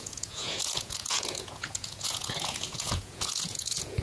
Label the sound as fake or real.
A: fake